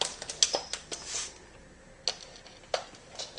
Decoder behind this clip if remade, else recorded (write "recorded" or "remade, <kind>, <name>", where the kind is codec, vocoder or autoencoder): recorded